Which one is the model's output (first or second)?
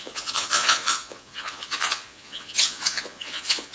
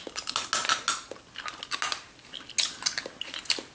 first